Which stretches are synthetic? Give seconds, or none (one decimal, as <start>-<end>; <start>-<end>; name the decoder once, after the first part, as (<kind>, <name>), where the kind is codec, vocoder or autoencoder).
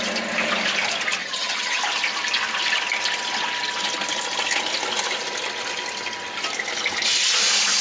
1.2-1.8 (vocoder, HiFi-GAN)